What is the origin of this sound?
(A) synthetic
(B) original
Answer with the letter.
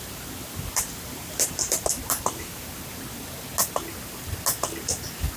B